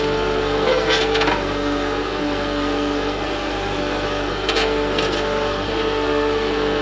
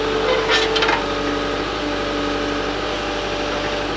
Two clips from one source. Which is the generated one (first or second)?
first